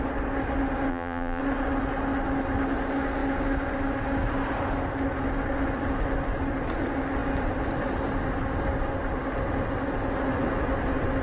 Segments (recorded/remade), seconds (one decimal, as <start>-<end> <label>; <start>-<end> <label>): 0.0-0.9 recorded; 0.9-1.4 remade; 1.4-11.2 recorded